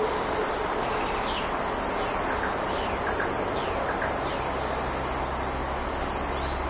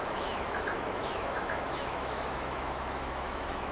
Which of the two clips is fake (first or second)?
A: second